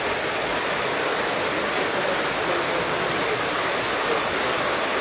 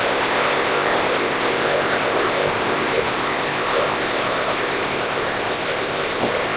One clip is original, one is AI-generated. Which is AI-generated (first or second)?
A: second